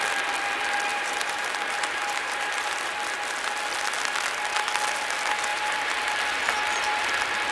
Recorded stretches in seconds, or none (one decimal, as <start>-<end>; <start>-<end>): 0.0-0.9; 2.7-5.5; 6.1-7.5